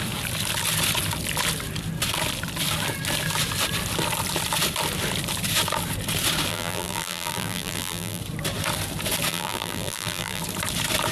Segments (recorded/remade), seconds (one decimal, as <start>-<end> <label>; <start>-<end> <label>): 0.0-6.5 recorded; 6.5-8.2 remade; 8.2-9.3 recorded; 9.3-10.4 remade; 10.4-11.1 recorded